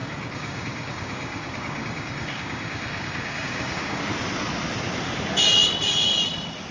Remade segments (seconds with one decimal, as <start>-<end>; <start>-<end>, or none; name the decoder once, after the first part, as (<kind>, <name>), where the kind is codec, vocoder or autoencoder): 0.0-4.0 (codec, DAC)